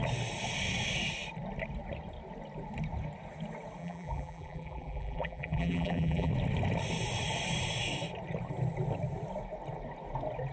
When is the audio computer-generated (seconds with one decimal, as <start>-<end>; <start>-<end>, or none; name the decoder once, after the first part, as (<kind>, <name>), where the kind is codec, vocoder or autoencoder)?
3.8-6.3 (vocoder, BigVGAN v2)